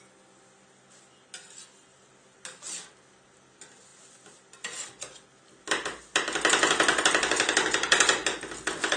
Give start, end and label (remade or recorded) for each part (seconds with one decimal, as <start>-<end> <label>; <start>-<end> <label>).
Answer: 0.0-9.0 recorded